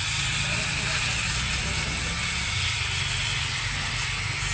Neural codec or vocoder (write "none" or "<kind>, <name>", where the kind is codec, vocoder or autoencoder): none